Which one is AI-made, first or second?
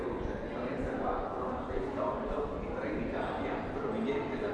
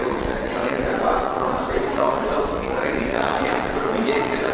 second